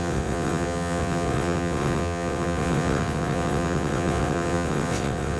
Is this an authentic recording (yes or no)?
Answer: no